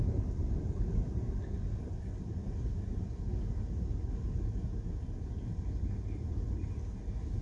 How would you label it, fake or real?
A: real